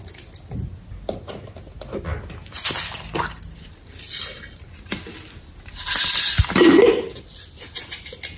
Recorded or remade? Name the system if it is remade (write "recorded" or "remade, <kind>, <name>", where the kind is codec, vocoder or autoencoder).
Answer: recorded